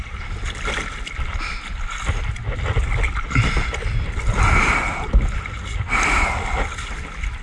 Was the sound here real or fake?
real